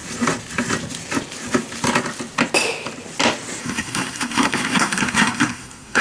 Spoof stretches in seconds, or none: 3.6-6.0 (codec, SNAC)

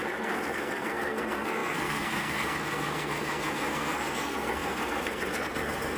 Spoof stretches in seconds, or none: 0.0-6.0 (codec, SNAC)

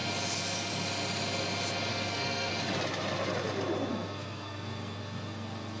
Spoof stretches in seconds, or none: 1.9-2.5 (codec, SNAC); 3.9-5.8

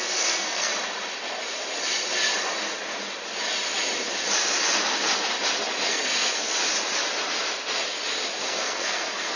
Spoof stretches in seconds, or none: 0.0-0.7 (codec, SNAC); 5.9-6.6; 8.4-9.4

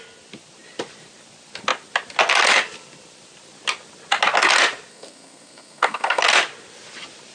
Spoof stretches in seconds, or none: 4.9-6.2 (codec, SNAC)

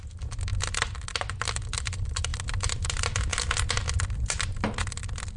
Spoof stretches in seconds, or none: none

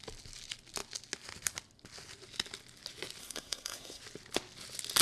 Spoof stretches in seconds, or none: 3.2-4.0 (codec, SNAC)

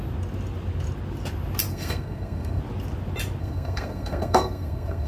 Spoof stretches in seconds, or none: 1.7-2.6 (codec, SNAC); 3.4-5.1